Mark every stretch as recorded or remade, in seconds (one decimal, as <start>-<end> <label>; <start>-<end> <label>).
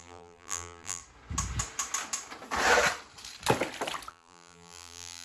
0.0-1.0 remade; 1.0-4.1 recorded; 4.1-5.2 remade